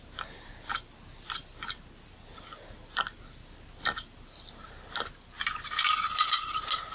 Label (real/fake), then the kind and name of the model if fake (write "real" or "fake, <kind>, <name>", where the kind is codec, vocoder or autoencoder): real